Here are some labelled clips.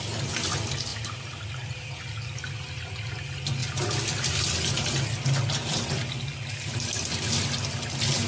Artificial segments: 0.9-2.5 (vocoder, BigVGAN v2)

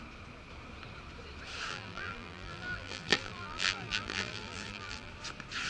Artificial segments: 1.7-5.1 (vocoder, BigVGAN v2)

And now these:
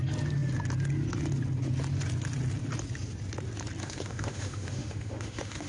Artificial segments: 3.8-5.7 (autoencoder, DAC-VAE)

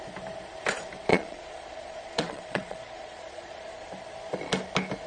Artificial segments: 1.1-3.9 (vocoder, Vocos)

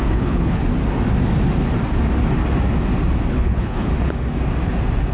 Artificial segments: 0.0-0.6 (codec, HILCodec); 3.3-3.9

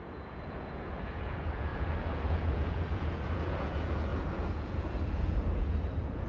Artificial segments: 0.0-6.3 (vocoder, Vocos)

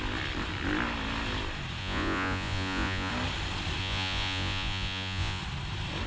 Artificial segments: 1.8-3.1 (vocoder, Vocos); 3.8-5.4